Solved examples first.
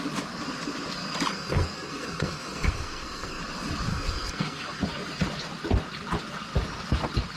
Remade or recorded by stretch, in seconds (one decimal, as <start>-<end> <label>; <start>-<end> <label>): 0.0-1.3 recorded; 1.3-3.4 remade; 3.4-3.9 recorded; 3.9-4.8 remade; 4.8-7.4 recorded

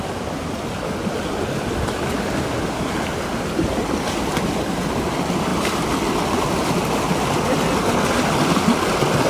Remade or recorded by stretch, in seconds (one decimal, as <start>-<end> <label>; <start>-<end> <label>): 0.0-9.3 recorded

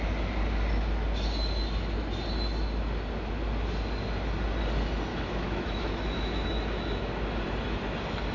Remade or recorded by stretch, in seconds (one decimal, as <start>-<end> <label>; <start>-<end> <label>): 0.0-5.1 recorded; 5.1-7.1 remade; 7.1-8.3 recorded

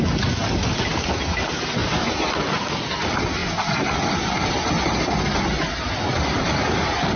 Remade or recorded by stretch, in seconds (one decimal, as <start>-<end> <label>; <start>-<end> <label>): 0.0-7.2 recorded

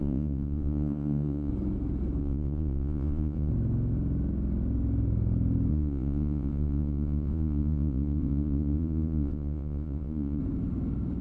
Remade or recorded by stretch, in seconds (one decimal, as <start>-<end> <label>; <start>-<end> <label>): 0.0-1.5 remade; 1.5-2.2 recorded; 2.2-3.5 remade; 3.5-5.7 recorded; 5.7-10.4 remade; 10.4-11.2 recorded

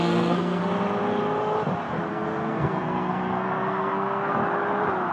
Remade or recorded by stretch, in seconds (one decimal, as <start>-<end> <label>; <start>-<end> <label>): 0.0-0.6 remade; 0.6-2.1 recorded; 2.1-4.4 remade; 4.4-5.1 recorded

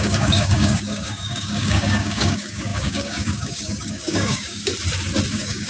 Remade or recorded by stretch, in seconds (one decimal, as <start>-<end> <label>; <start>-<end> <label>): 0.0-4.7 remade; 4.7-5.3 recorded; 5.3-5.7 remade